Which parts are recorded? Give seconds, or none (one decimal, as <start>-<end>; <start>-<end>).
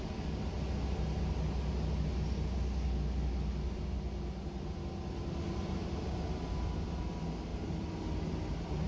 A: 0.0-7.5; 8.4-8.9